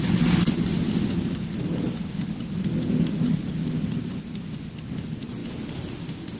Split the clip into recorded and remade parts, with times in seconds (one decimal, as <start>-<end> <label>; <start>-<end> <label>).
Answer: 0.0-6.4 recorded